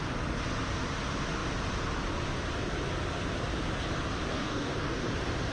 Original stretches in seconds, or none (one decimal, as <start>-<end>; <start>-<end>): 0.0-4.3; 5.1-5.5